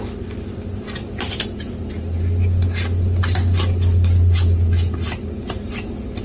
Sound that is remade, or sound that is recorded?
recorded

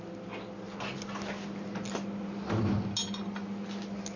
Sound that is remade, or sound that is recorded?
recorded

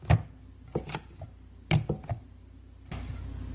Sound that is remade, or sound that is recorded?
recorded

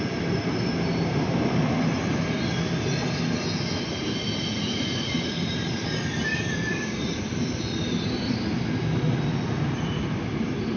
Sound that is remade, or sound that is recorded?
recorded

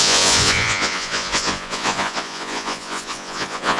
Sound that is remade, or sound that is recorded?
remade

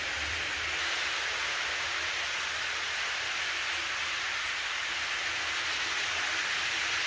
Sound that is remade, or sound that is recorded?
recorded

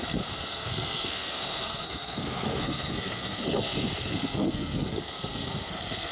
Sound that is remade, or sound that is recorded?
remade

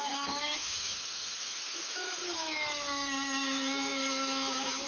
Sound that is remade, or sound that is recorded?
remade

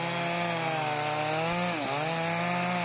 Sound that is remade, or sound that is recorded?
recorded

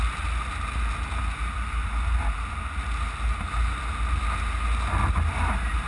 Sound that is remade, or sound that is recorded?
recorded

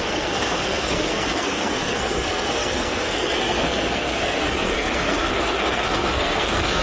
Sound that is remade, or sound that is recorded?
remade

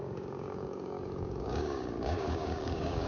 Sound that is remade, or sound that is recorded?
remade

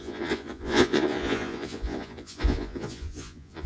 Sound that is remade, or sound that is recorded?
remade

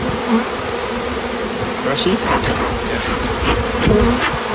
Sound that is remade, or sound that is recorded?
recorded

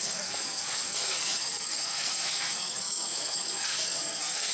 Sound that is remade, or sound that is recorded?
remade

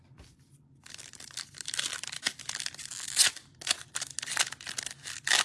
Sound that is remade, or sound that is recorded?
recorded